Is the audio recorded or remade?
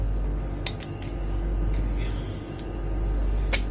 recorded